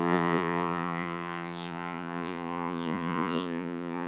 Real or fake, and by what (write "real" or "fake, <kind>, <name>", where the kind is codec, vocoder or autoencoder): fake, vocoder, Vocos